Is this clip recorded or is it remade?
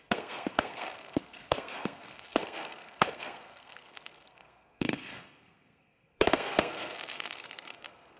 remade